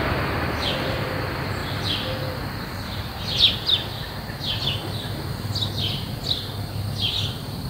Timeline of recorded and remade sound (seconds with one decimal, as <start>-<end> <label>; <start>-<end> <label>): 0.0-7.7 recorded

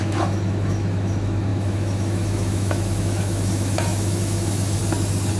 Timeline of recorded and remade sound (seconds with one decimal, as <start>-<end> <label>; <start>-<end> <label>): 0.0-4.8 remade; 4.8-5.4 recorded

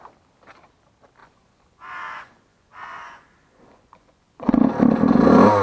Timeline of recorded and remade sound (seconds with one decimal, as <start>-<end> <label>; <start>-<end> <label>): 0.0-1.2 recorded; 1.2-4.6 remade; 4.6-5.6 recorded

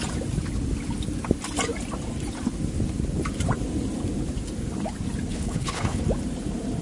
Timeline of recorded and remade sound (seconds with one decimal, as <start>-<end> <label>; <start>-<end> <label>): 0.0-5.3 recorded; 5.3-6.0 remade; 6.0-6.8 recorded

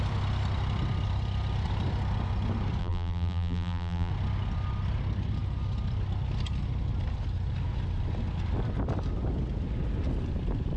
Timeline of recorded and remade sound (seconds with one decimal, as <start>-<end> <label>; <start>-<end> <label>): 0.0-2.8 recorded; 2.8-4.1 remade; 4.1-10.8 recorded

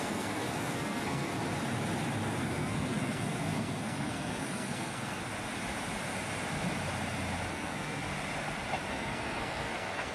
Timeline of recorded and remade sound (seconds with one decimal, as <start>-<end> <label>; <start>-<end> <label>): 0.0-1.3 remade; 1.3-2.4 recorded; 2.4-5.2 remade; 5.2-7.5 recorded; 7.5-8.1 remade; 8.1-8.9 recorded; 8.9-10.1 remade

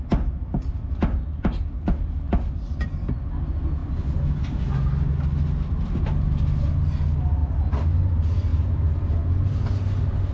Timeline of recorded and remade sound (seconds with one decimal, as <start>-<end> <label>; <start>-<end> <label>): 0.0-10.3 recorded

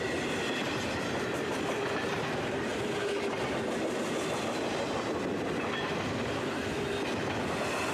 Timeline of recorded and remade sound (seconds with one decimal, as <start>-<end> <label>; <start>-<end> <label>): 0.0-7.9 recorded